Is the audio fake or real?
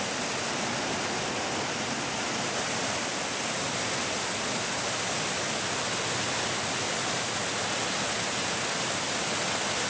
real